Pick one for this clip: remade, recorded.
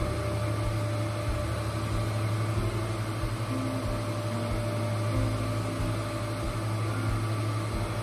recorded